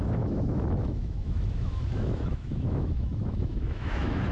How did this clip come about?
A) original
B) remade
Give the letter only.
B